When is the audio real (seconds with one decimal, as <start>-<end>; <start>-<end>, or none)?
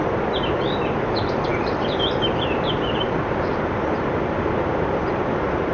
none